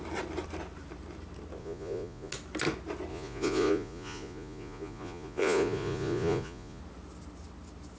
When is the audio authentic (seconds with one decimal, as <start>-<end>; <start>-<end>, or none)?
0.0-1.6; 2.3-3.1; 6.8-8.0